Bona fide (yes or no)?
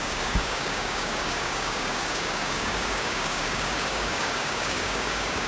no